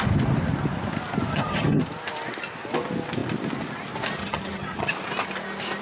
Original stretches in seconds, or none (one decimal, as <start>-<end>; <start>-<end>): 0.0-1.3; 1.8-4.2; 4.9-5.8

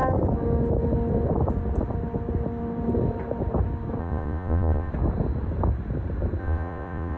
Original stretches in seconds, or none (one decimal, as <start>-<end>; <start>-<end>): 0.0-4.0; 4.9-6.4

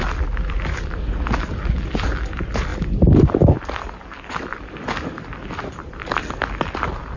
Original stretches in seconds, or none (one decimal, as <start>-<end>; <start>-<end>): 0.0-7.2

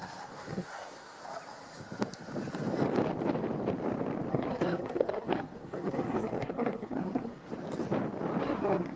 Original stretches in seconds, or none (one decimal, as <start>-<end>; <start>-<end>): 1.2-4.3; 7.5-8.4